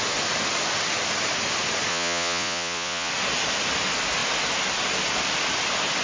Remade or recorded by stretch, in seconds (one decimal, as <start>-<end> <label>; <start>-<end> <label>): 0.0-1.9 recorded; 1.9-3.1 remade; 3.1-6.0 recorded